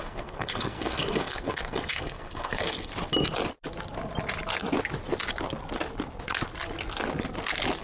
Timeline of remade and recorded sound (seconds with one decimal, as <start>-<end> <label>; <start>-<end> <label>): 0.0-2.9 remade; 2.9-7.8 recorded